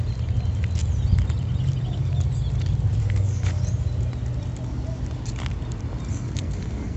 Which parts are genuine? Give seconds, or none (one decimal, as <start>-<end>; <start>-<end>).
0.0-3.0; 3.6-6.1